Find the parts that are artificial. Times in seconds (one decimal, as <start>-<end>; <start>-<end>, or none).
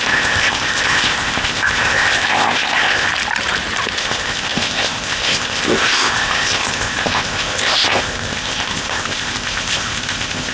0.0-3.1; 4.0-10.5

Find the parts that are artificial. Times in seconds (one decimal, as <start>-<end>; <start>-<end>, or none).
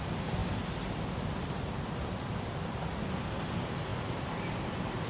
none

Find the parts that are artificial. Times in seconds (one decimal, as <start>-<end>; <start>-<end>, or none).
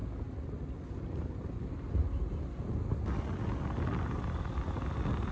none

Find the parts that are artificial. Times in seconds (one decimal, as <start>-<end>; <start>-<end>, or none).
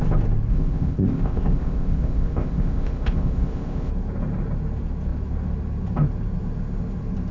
0.5-3.9